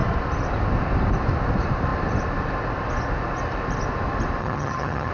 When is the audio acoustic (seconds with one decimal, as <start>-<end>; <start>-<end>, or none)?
0.0-4.4